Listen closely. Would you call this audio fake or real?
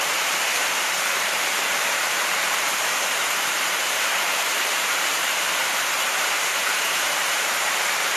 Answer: fake